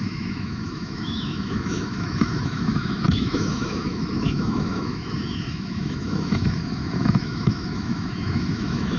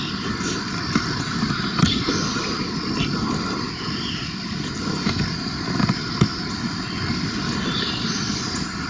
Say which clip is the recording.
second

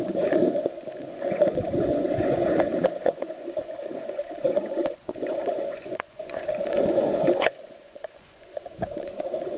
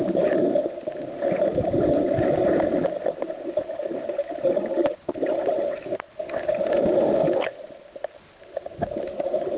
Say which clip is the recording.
second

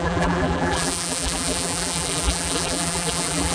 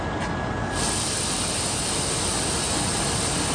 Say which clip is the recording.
second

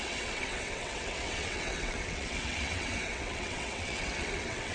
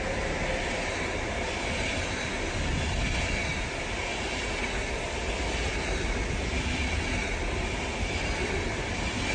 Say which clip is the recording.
second